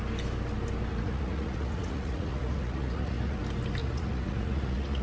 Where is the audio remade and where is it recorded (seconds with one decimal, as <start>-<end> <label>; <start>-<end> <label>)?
0.0-0.9 recorded; 0.9-3.4 remade; 3.4-3.8 recorded; 3.8-5.0 remade